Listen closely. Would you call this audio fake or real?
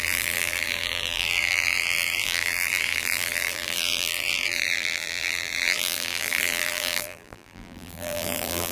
fake